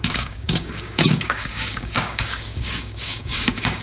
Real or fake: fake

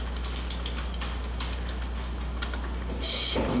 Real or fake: real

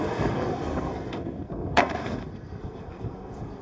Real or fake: fake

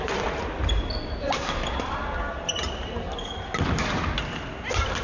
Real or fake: real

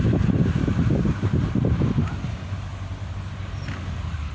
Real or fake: real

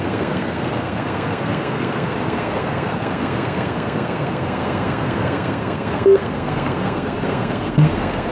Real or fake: fake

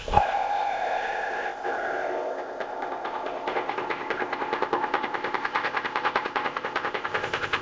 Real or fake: fake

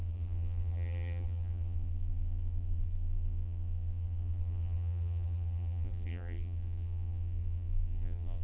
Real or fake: fake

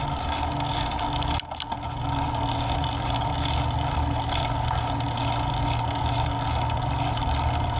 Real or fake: real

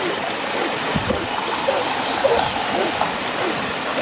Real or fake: real